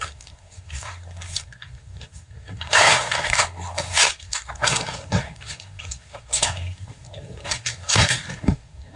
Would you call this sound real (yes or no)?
no